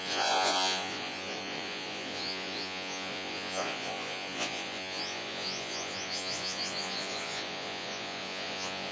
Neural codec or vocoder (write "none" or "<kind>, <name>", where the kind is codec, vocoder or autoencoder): vocoder, Vocos